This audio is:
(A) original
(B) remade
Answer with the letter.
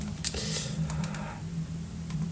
A